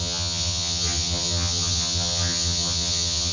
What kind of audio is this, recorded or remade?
remade